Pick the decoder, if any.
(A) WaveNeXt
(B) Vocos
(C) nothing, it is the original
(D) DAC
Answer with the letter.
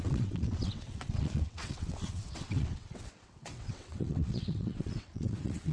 A